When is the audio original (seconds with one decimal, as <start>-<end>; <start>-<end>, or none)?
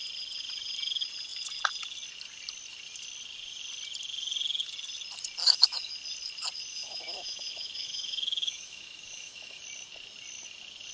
0.0-5.4; 5.9-6.7; 9.6-10.9